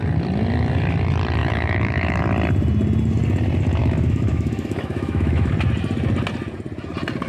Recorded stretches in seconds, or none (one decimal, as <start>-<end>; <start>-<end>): 0.0-1.4; 2.2-3.8; 5.5-7.3

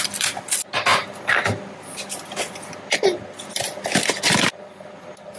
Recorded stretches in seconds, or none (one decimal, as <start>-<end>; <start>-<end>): 0.0-5.4

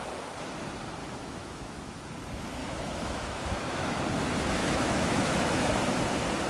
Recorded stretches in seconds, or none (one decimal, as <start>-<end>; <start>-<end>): 0.0-1.0; 2.0-2.6; 4.0-4.6; 6.0-6.5

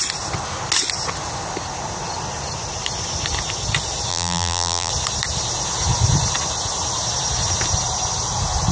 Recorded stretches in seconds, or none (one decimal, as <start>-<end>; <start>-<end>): 0.0-4.1; 4.9-8.7

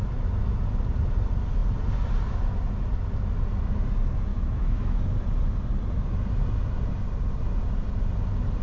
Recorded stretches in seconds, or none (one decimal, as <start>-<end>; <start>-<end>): 0.0-4.3; 5.0-8.6

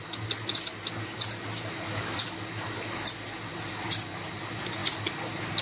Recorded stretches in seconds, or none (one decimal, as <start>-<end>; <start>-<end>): 0.0-5.6

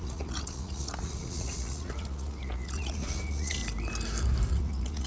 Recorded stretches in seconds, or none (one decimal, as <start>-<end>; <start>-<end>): 3.6-4.5

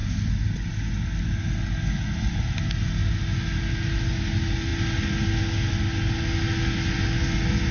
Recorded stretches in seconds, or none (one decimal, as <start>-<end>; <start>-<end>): 0.0-7.7